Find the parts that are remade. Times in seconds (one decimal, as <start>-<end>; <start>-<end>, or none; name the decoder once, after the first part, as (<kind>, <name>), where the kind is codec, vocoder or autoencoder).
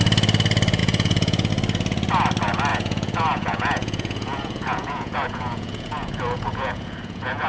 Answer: 0.8-1.5 (vocoder, Vocos); 2.7-7.5